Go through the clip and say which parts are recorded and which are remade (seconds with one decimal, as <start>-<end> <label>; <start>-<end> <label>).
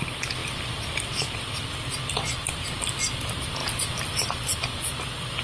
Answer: 0.0-5.4 recorded